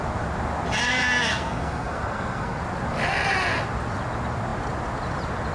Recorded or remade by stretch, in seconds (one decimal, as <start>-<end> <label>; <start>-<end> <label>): 0.0-1.0 recorded; 1.0-2.6 remade; 2.6-5.5 recorded